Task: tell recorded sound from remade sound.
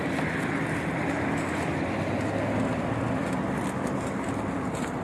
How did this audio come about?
recorded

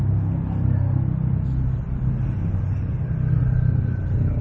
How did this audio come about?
recorded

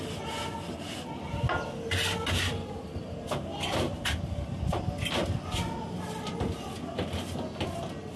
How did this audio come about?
recorded